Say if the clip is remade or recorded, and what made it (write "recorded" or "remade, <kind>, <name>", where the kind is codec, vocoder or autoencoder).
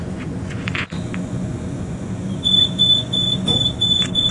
remade, vocoder, Vocos